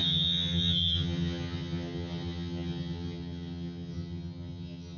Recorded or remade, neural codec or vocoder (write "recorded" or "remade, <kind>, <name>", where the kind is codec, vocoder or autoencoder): remade, vocoder, HiFi-GAN